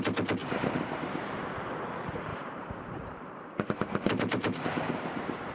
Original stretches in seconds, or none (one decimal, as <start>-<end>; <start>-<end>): 0.0-0.4; 1.4-2.3